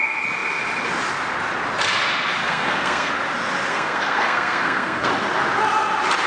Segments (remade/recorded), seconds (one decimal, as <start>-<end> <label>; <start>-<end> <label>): 0.0-2.4 recorded; 2.4-3.1 remade; 3.1-3.7 recorded; 3.7-5.1 remade; 5.1-6.3 recorded